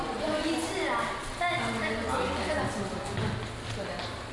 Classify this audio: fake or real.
real